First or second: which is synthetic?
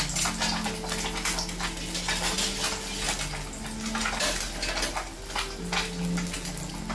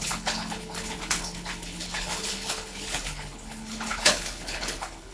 second